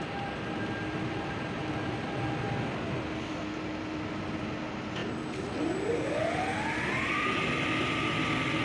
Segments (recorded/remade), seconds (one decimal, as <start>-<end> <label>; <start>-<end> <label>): 0.0-8.6 recorded